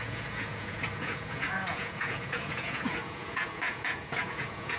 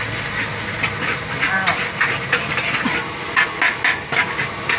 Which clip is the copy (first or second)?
first